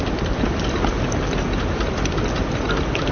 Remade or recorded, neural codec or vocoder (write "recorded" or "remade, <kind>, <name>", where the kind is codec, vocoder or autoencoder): recorded